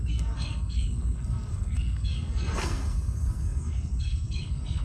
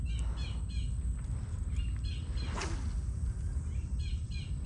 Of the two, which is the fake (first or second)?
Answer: first